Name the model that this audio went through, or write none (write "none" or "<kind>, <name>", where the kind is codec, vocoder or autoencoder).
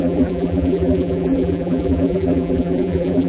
vocoder, BigVGAN v2